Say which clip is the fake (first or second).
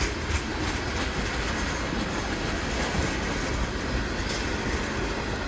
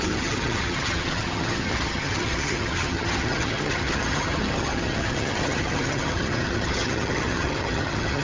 second